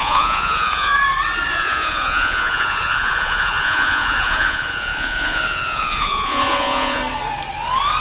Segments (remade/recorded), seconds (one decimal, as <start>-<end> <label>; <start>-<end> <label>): 0.0-0.9 remade; 0.9-1.5 recorded; 1.5-7.0 remade; 7.0-8.0 recorded